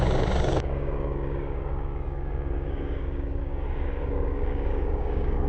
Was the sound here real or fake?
fake